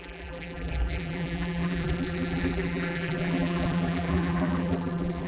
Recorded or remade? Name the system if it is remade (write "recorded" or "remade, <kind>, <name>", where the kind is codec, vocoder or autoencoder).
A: remade, vocoder, BigVGAN v2